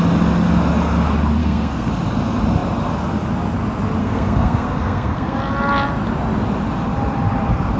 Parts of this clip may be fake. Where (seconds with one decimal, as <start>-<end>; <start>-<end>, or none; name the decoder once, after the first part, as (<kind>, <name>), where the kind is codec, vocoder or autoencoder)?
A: 1.4-1.9 (codec, SNAC); 4.0-5.4